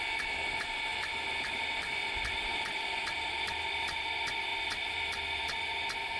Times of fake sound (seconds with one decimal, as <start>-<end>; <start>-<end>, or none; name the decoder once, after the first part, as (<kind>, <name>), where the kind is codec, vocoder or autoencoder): 0.9-4.0 (vocoder, BigVGAN v2); 4.5-5.4